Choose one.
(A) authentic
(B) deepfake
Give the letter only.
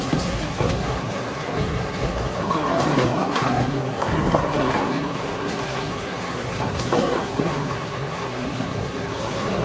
B